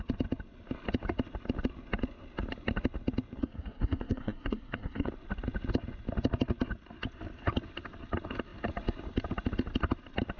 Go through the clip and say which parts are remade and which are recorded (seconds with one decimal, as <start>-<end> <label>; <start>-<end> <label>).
0.0-3.4 recorded; 3.4-5.1 remade; 5.1-10.4 recorded